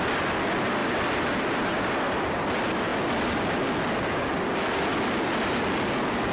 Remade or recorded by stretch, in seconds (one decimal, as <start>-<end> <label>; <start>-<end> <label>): 0.0-0.8 recorded; 0.8-1.7 remade; 1.7-6.3 recorded